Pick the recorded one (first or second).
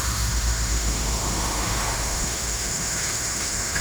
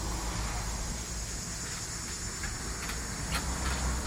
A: second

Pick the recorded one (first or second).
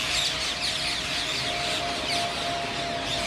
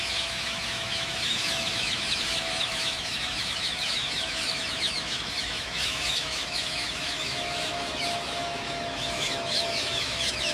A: first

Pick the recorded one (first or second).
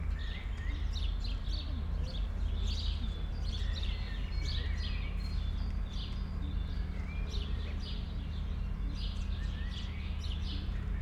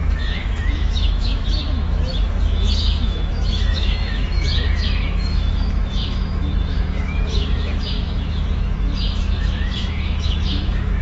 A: first